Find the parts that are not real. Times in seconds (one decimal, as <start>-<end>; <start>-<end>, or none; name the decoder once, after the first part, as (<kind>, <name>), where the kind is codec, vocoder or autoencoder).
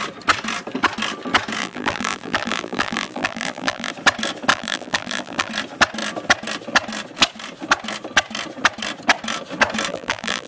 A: 1.6-3.9 (vocoder, BigVGAN v2); 4.5-5.5; 9.9-10.5